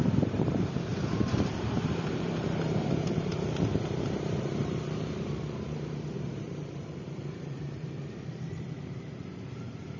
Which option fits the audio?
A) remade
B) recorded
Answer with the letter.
A